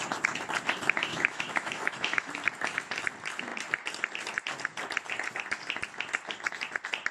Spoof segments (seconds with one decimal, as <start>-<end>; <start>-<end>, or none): 1.1-2.3